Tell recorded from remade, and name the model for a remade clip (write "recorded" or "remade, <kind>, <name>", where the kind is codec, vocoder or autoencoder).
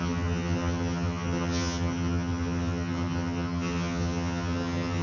remade, vocoder, HiFi-GAN